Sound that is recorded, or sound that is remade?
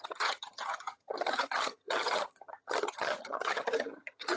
remade